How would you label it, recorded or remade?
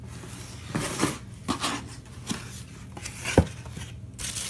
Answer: recorded